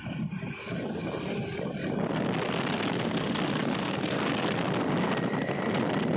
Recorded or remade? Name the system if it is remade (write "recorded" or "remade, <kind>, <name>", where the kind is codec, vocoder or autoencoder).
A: recorded